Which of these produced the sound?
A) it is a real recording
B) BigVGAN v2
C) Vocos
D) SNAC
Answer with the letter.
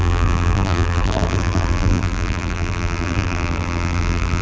B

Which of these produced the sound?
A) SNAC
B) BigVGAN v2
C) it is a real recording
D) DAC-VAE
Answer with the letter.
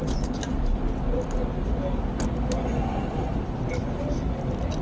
C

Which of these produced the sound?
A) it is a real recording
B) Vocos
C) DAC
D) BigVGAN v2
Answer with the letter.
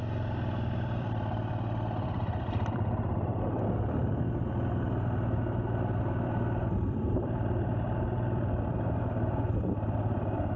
D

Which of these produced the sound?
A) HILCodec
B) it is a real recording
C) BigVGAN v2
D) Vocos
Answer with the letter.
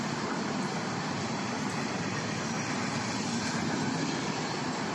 C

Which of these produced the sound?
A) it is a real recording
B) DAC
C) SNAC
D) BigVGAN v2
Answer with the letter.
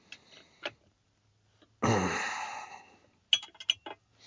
A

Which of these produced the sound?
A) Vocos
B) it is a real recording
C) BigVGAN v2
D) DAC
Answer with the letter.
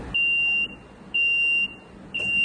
B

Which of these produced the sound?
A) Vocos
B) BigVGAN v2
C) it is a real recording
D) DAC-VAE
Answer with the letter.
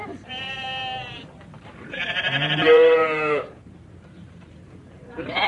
B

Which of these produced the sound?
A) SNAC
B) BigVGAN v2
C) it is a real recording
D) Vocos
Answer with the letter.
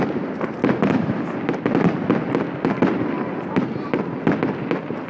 C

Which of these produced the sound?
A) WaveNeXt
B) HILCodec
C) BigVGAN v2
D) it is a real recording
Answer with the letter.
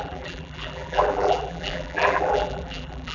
C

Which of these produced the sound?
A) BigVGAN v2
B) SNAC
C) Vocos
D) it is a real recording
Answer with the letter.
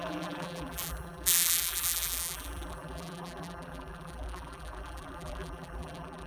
A